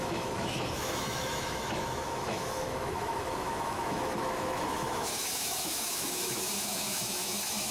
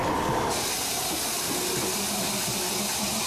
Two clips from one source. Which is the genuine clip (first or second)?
second